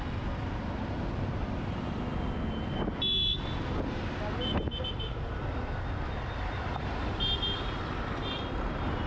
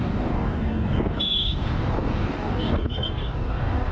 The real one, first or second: first